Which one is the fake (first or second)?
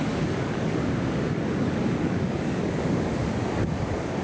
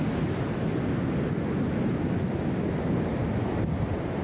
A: first